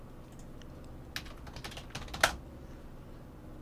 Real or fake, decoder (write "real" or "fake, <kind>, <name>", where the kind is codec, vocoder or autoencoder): real